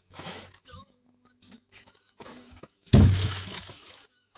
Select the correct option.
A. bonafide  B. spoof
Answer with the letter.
B